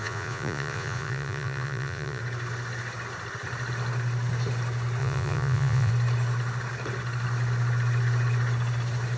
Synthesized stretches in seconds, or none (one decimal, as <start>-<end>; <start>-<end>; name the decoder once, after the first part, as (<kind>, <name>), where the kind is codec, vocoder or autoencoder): 0.0-2.2 (vocoder, Vocos); 5.0-5.9